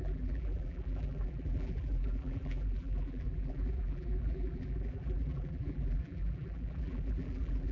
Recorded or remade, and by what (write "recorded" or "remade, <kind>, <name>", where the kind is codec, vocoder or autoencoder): remade, vocoder, BigVGAN v2